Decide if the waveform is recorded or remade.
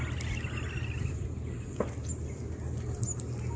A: recorded